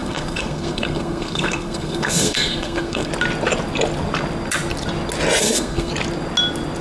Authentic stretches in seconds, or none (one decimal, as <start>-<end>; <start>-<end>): 3.1-5.4; 5.9-6.8